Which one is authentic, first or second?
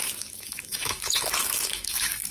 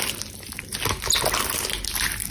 second